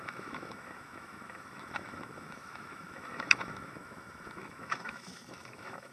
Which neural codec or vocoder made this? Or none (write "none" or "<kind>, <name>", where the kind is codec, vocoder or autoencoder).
autoencoder, DAC-VAE